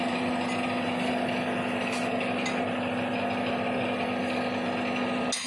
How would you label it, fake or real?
real